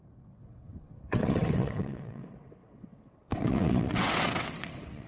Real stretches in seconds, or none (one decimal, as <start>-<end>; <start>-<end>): none